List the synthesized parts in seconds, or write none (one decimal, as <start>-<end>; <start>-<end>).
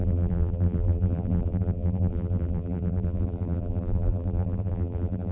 0.0-5.3